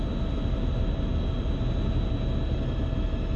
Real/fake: real